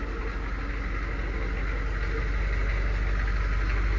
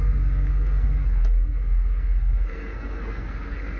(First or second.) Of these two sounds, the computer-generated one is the second